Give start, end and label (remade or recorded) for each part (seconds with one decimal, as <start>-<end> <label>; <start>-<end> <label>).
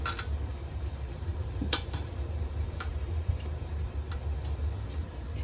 0.0-0.5 recorded; 0.5-3.7 remade; 3.7-5.4 recorded